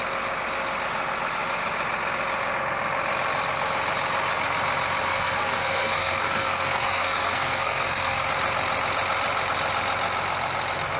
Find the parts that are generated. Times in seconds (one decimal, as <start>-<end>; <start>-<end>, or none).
5.1-8.3